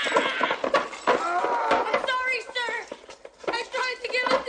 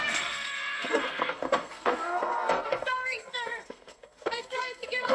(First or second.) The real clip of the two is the first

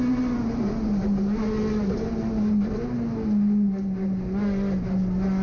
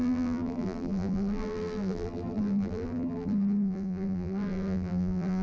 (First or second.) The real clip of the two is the first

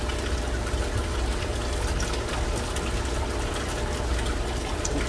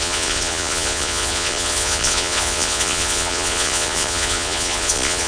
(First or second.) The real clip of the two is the first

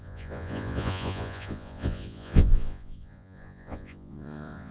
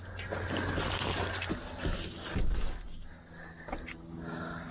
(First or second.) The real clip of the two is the second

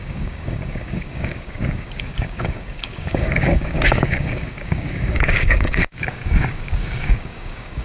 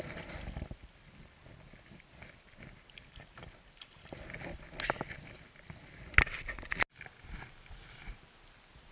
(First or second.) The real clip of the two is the second